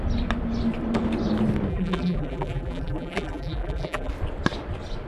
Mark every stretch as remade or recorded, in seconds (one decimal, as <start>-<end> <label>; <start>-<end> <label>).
0.0-1.7 recorded; 1.7-4.1 remade; 4.1-5.1 recorded

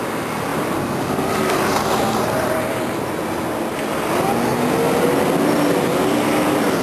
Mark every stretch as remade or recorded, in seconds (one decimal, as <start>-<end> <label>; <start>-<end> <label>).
0.0-6.8 recorded

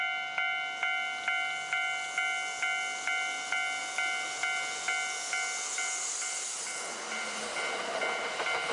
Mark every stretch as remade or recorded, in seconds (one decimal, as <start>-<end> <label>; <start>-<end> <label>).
0.0-8.7 recorded

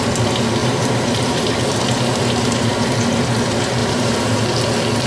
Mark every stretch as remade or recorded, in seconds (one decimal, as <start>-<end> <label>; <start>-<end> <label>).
0.0-0.6 recorded; 0.6-1.4 remade; 1.4-2.1 recorded; 2.1-2.7 remade; 2.7-3.8 recorded; 3.8-4.4 remade; 4.4-5.1 recorded

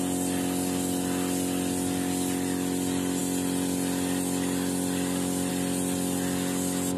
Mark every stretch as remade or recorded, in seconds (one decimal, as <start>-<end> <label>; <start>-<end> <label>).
0.0-7.0 recorded